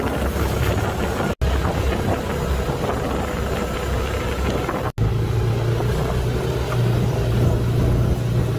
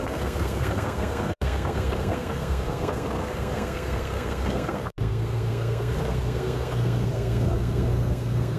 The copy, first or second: second